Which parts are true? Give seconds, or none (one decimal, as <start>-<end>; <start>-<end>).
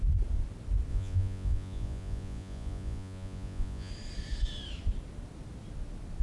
0.0-0.9; 3.9-6.2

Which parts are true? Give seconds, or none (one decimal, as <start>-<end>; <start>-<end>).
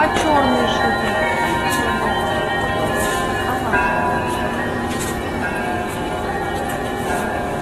0.0-3.8; 5.9-6.8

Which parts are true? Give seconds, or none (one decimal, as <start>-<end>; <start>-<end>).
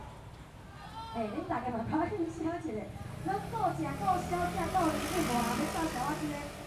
0.0-6.7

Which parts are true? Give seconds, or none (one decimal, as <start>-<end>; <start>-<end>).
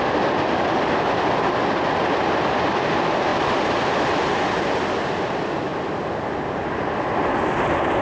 0.0-8.0